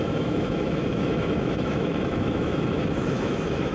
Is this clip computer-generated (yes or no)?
yes